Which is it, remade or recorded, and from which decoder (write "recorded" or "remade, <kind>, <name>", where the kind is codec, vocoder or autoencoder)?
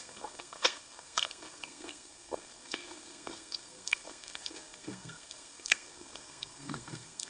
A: remade, codec, SNAC